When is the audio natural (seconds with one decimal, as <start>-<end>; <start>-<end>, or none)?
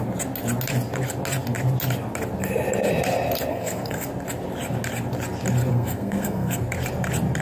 0.0-3.5; 4.1-5.7; 6.6-7.4